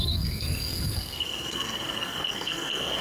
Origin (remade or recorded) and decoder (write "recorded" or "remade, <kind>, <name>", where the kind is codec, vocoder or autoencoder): remade, codec, SNAC